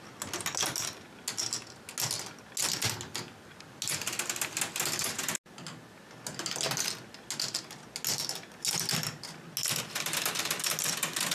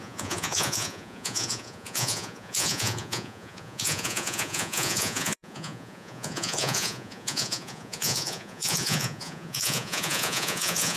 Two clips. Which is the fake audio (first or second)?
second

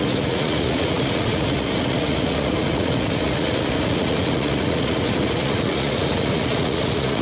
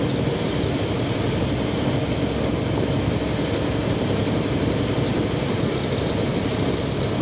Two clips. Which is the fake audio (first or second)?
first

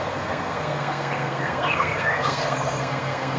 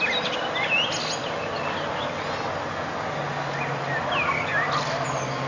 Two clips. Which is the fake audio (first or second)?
first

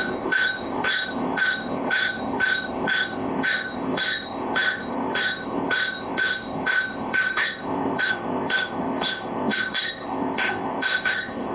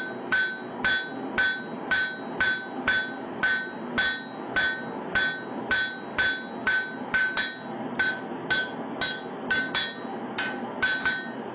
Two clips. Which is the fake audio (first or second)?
first